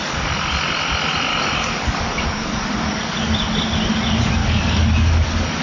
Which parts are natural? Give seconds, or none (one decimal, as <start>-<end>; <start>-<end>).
0.0-1.3; 3.3-4.4